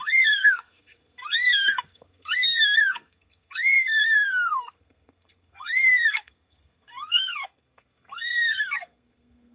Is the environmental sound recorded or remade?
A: remade